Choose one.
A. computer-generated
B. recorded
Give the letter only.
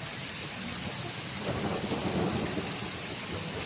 B